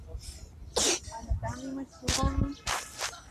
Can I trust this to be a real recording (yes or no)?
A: yes